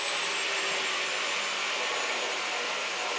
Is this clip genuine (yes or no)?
yes